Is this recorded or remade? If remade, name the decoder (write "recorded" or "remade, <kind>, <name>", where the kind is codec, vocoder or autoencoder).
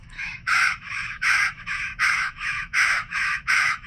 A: remade, autoencoder, DAC-VAE